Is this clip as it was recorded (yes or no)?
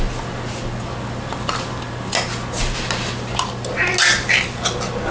yes